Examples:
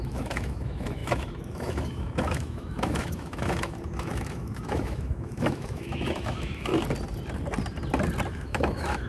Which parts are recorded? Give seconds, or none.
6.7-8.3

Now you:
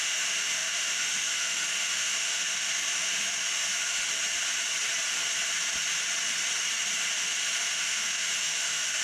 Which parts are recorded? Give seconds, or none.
4.0-7.4

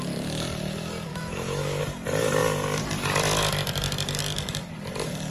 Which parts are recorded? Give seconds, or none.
0.0-1.1; 1.8-5.3

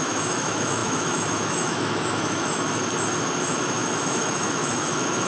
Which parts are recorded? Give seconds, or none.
2.8-3.4

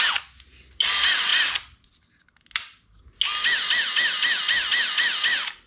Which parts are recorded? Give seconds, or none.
0.0-5.7